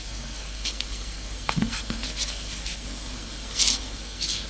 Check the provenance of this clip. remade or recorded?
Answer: remade